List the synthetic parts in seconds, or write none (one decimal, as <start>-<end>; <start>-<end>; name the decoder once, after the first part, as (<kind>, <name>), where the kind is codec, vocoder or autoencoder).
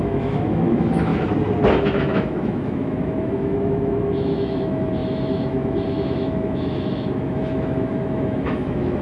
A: 0.0-1.1 (autoencoder, DAC-VAE); 1.7-9.0